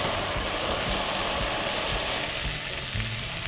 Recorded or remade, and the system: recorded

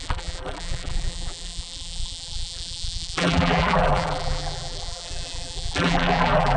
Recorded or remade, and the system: remade, vocoder, BigVGAN v2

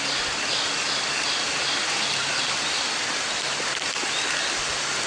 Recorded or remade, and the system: recorded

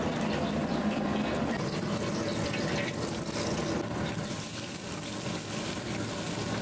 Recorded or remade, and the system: recorded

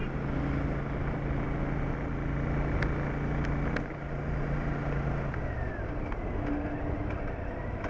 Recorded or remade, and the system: recorded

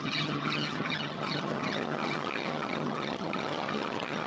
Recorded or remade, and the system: remade, vocoder, HiFi-GAN